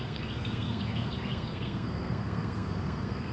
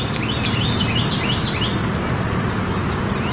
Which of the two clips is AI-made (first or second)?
first